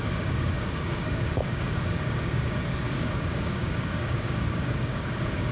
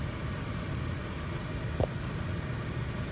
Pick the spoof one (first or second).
first